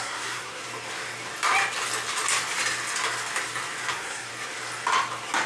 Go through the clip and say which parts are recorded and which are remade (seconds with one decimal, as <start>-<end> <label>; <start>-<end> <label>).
0.0-0.6 remade; 0.6-3.9 recorded; 3.9-4.3 remade; 4.3-5.5 recorded